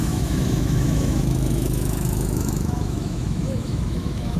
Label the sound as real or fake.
fake